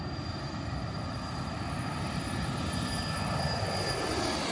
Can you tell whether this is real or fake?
fake